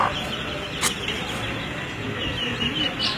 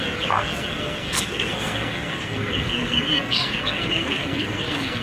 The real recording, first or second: first